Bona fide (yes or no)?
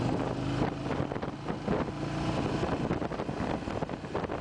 yes